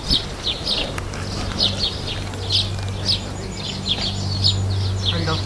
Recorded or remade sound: recorded